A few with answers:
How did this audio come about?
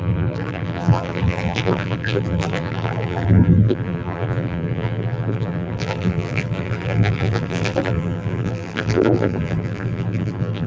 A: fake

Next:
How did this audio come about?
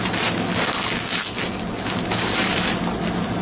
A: real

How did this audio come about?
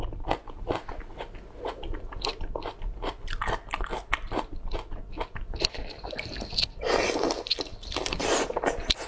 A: real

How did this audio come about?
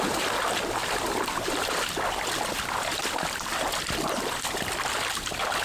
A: fake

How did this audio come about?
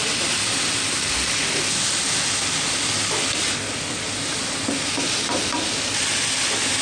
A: real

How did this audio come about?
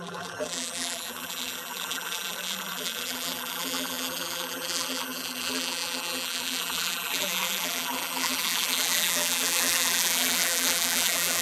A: fake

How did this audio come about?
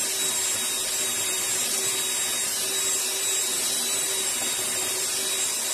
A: real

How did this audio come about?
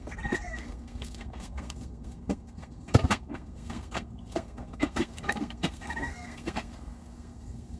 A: fake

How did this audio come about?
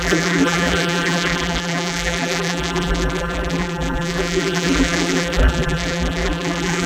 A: fake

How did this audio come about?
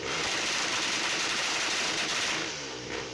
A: fake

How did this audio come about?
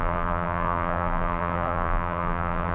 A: fake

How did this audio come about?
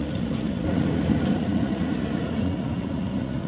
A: fake